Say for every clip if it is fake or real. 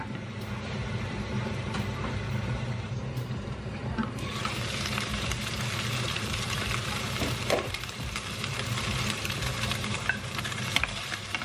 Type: fake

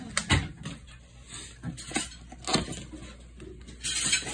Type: real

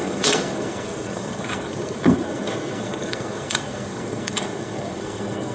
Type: fake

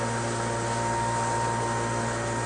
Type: real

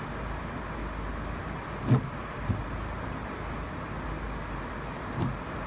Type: real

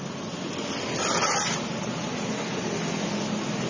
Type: real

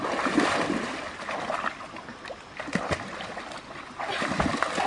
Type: real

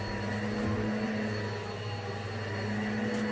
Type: real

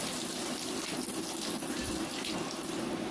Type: real